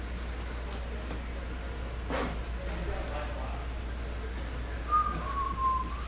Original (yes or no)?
yes